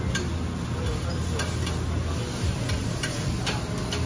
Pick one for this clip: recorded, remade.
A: recorded